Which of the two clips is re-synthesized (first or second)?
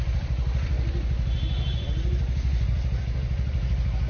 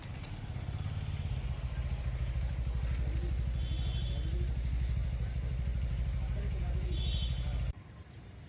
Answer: first